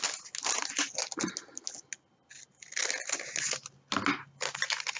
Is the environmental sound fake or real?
real